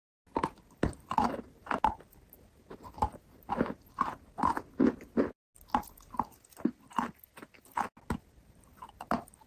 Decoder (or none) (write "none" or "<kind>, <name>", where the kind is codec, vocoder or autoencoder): none